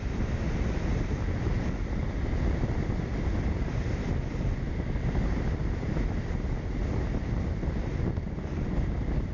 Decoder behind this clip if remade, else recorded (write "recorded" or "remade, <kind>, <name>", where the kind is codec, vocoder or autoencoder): recorded